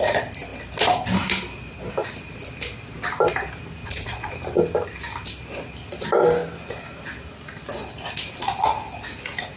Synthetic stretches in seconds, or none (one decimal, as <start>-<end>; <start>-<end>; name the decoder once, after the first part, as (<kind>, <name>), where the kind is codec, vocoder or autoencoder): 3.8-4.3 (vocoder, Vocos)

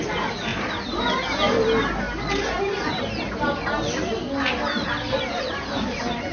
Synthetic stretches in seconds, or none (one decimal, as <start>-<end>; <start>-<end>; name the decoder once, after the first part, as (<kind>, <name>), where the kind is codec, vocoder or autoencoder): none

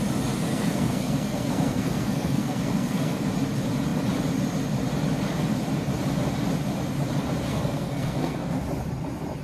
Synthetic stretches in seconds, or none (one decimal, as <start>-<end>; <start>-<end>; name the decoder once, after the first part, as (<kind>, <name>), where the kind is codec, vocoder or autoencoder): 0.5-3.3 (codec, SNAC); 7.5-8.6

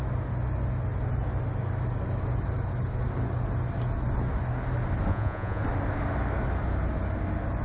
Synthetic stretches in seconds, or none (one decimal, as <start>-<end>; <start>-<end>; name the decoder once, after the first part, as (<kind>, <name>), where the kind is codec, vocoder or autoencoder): 5.1-5.6 (vocoder, Vocos)

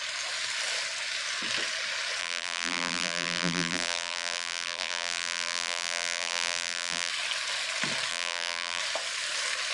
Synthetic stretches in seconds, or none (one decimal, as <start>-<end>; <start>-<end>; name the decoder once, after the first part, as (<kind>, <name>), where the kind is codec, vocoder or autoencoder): 2.2-7.1 (vocoder, BigVGAN v2); 8.1-8.8

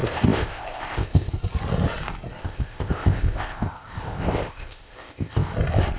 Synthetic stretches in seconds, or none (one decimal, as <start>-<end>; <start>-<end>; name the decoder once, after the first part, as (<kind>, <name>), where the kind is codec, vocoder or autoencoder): 0.0-1.3 (codec, ZipCodec); 2.4-5.5